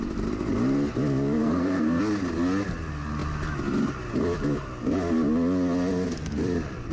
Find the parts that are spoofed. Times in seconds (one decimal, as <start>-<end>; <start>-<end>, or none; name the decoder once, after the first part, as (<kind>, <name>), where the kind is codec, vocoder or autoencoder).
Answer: 1.4-2.0 (codec, SNAC)